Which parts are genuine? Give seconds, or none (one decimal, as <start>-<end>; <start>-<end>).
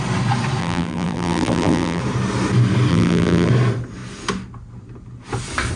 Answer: 0.0-0.6; 2.0-2.9; 3.5-5.8